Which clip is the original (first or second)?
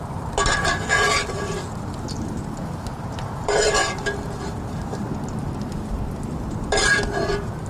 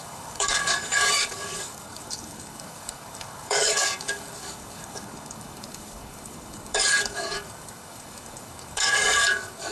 first